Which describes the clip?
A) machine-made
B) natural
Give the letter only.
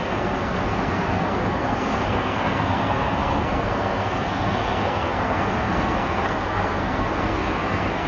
A